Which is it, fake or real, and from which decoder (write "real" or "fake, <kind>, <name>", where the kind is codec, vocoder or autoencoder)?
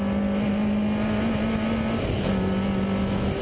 real